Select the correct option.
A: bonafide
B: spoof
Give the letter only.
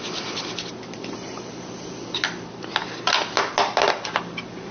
A